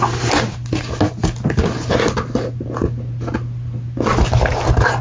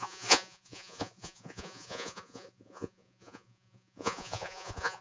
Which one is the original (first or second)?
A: first